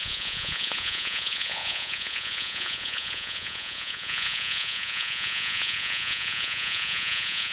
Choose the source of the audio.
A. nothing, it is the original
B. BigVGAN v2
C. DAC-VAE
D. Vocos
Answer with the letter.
D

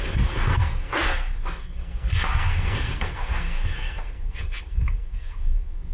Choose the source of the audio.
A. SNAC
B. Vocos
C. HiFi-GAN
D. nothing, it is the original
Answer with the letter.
A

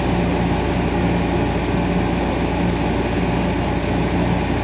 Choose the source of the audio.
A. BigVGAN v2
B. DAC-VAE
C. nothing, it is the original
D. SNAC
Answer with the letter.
C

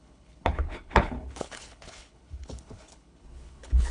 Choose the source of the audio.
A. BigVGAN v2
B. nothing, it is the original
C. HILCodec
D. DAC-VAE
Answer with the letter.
C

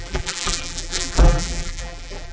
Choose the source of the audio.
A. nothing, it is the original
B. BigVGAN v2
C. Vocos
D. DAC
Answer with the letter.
B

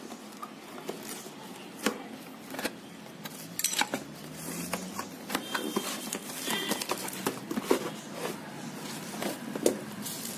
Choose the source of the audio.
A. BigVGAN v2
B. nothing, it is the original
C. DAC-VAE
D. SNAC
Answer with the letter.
B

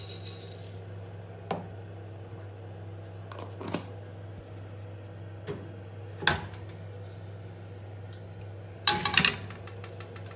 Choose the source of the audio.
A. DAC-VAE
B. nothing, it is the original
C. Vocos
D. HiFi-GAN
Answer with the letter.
B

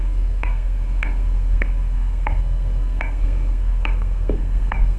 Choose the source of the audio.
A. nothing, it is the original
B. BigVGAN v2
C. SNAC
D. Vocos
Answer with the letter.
C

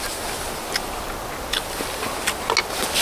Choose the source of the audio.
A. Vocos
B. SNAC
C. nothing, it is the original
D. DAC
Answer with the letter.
C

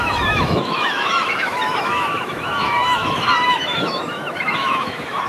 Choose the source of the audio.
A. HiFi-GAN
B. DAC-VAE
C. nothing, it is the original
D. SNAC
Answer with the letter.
B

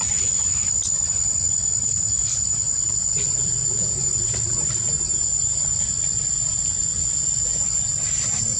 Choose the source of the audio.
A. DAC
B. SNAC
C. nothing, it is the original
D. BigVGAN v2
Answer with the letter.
C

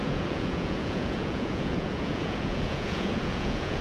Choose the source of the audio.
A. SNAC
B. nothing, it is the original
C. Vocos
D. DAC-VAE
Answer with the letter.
C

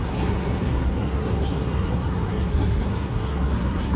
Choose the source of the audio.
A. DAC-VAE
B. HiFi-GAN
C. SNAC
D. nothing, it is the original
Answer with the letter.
C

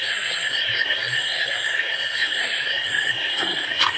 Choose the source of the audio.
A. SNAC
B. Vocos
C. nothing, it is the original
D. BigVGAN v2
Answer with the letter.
A